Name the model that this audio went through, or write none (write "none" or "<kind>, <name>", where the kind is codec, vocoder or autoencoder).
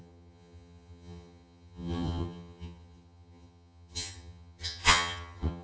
vocoder, HiFi-GAN